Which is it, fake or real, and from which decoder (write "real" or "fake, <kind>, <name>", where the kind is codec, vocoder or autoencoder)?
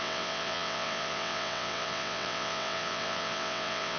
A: fake, vocoder, WaveNeXt